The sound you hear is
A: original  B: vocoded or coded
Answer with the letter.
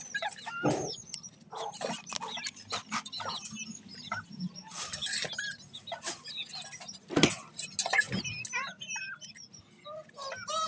A